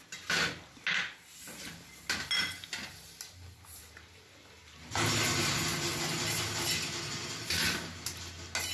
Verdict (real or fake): real